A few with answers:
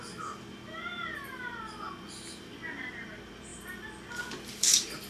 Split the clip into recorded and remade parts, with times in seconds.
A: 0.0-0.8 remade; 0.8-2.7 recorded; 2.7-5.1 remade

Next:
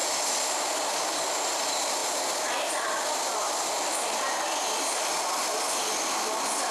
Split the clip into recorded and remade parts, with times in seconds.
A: 0.0-6.7 recorded